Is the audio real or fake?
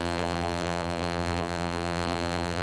fake